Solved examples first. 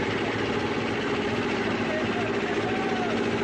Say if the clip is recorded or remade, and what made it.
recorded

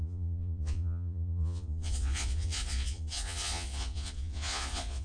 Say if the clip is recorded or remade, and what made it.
remade, vocoder, Vocos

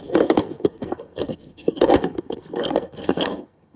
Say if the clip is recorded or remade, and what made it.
remade, codec, SNAC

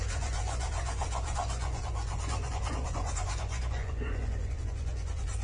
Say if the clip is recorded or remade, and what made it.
remade, vocoder, Vocos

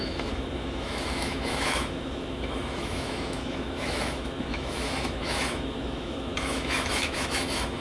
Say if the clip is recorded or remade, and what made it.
remade, autoencoder, DAC-VAE